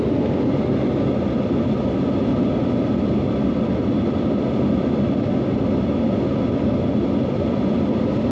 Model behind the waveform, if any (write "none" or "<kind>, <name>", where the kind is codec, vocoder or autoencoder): none